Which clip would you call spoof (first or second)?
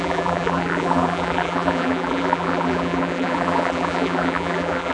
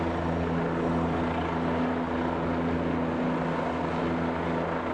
first